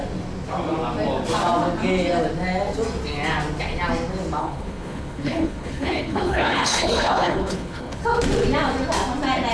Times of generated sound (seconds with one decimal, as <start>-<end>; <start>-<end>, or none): 4.4-8.0

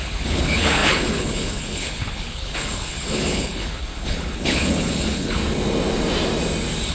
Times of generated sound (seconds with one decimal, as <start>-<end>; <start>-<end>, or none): 0.0-5.4

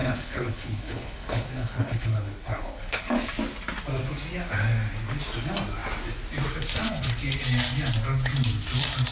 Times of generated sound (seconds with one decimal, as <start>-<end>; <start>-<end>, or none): 0.0-3.0

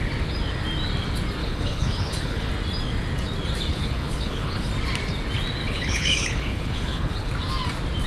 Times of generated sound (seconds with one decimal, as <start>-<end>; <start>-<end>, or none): 1.4-2.5; 3.7-4.7; 5.6-7.3